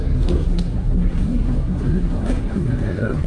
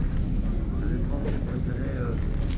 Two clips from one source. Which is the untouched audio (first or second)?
second